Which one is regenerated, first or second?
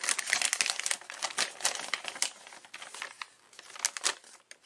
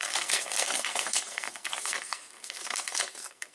second